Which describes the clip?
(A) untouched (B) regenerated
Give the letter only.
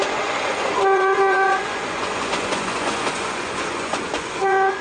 B